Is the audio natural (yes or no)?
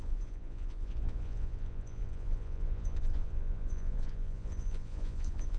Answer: no